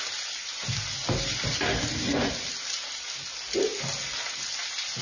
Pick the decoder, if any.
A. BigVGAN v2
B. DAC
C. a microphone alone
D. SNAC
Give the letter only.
C